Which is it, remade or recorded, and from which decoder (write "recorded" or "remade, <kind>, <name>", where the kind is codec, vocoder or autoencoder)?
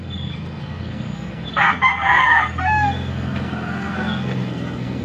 remade, codec, SNAC